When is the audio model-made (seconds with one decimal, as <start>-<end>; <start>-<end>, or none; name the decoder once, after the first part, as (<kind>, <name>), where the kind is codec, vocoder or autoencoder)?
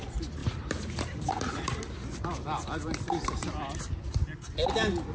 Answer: 0.4-1.3 (vocoder, BigVGAN v2); 2.6-4.1